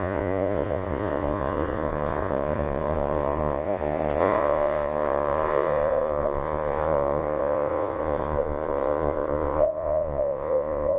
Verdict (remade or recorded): remade